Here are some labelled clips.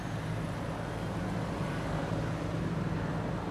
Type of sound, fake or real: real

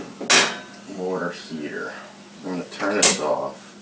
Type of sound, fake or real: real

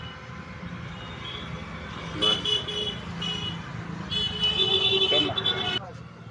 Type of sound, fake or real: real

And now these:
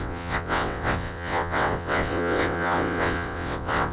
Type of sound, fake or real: fake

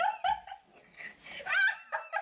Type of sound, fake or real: real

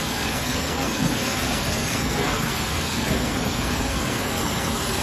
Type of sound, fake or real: fake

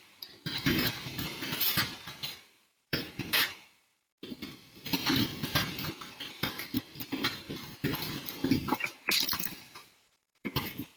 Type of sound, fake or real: fake